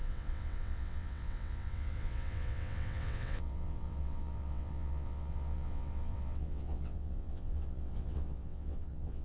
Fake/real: fake